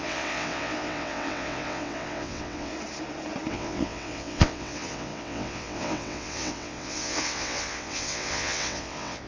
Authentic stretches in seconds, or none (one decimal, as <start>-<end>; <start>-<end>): 2.7-3.5